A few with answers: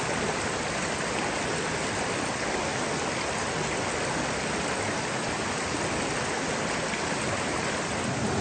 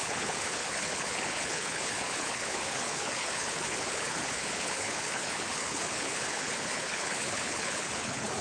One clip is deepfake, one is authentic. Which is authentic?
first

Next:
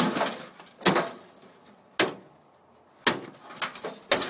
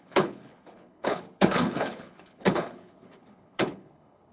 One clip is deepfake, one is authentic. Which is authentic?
first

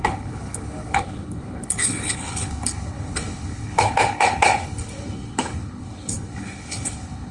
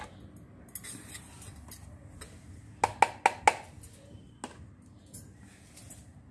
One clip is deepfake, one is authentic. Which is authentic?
second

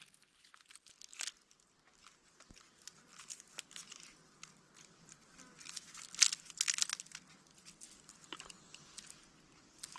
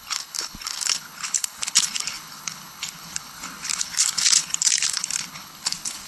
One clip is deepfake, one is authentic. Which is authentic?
first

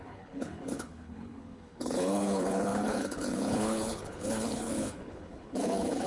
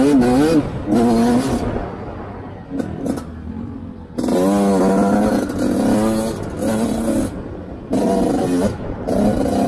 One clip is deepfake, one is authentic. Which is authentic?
second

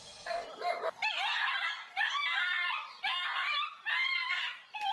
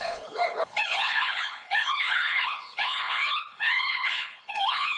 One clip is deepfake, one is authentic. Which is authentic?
first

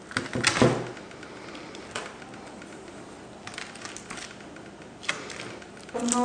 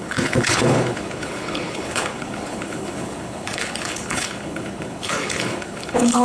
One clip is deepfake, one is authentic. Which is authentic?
first